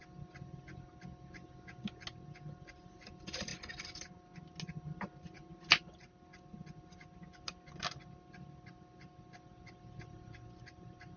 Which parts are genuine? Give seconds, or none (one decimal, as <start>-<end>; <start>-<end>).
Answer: 0.0-11.2